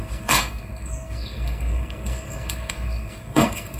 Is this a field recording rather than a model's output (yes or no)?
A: no